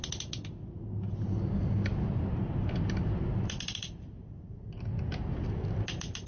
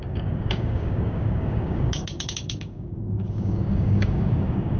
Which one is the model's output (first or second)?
second